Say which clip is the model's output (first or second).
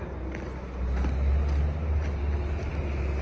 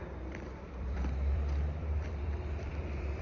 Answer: second